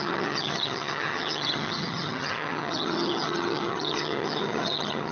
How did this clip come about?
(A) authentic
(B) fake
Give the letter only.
B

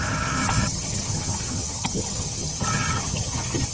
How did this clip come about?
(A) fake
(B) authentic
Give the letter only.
A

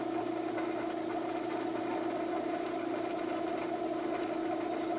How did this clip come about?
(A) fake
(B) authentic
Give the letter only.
B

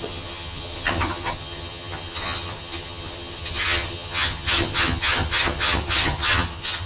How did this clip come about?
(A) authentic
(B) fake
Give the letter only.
B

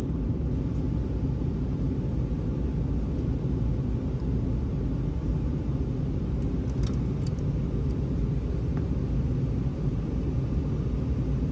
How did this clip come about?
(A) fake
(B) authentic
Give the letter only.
B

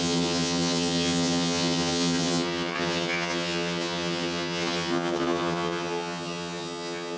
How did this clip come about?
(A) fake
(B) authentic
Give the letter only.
A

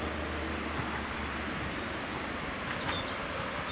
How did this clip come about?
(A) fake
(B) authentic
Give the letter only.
B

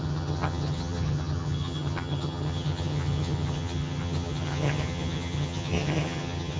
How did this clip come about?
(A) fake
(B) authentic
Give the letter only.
A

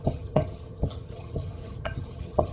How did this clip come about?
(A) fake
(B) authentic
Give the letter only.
A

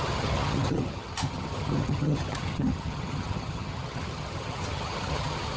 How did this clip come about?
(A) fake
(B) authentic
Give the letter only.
A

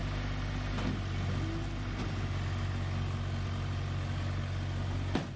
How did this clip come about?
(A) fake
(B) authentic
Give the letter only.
B